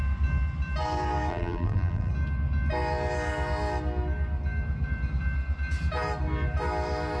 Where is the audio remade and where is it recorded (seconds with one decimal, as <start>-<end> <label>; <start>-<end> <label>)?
0.0-1.3 recorded; 1.3-2.1 remade; 2.1-7.2 recorded